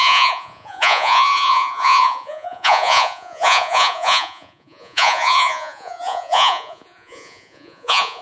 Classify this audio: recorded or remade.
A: remade